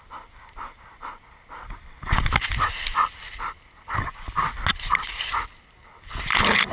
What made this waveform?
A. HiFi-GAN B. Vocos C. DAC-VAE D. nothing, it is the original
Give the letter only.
D